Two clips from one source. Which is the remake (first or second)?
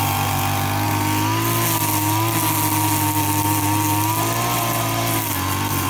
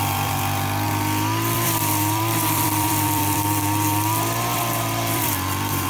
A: second